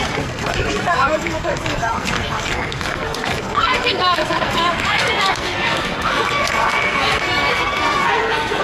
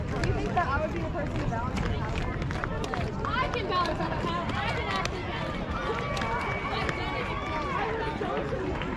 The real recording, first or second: second